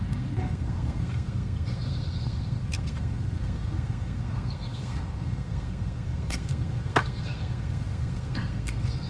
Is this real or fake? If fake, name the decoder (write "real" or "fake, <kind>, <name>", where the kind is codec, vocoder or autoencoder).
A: fake, codec, SNAC